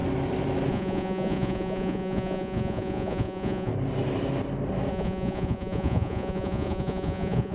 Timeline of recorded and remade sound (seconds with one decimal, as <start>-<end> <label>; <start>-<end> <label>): 0.0-0.7 recorded; 0.7-3.7 remade; 3.7-4.9 recorded; 4.9-7.5 remade